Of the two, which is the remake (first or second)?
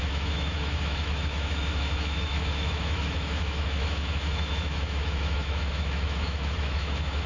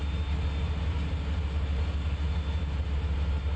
first